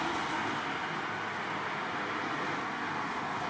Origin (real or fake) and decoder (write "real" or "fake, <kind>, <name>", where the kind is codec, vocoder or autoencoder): real